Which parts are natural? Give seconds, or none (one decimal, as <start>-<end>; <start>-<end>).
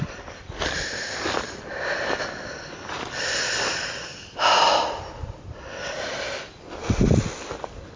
0.0-8.0